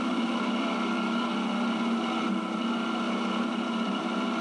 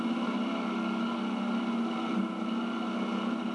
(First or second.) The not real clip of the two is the first